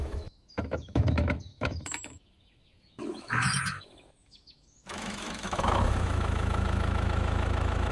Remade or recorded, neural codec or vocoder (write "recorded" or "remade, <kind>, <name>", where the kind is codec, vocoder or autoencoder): remade, autoencoder, DAC-VAE